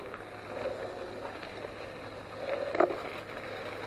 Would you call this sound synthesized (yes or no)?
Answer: no